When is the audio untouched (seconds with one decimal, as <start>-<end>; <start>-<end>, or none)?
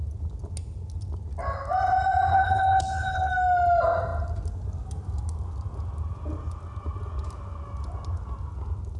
0.0-2.3; 3.3-9.0